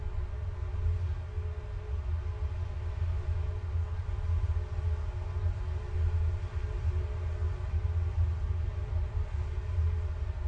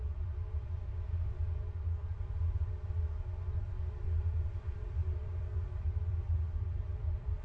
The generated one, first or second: second